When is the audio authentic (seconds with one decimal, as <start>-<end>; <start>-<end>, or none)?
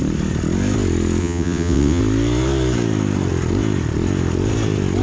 0.0-1.2; 2.0-5.0